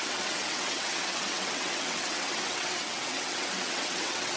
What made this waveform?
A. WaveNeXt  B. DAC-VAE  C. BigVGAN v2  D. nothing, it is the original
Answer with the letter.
A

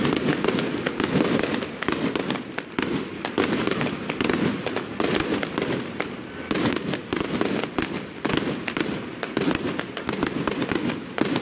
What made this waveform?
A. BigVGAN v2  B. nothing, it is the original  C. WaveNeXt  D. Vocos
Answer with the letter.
B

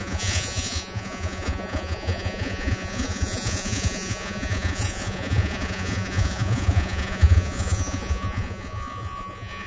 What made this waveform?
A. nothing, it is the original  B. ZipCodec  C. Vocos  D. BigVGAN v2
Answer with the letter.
C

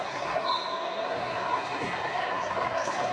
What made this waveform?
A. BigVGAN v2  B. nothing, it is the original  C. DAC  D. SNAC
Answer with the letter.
D